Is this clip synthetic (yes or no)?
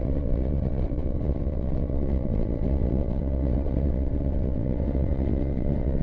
yes